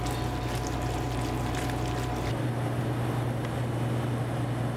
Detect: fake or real real